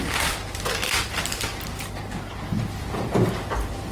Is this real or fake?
real